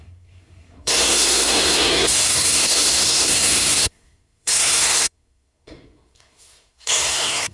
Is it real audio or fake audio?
fake